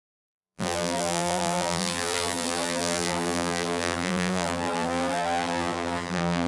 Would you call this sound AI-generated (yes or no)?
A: yes